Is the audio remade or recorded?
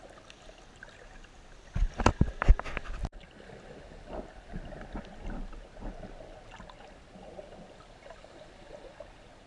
recorded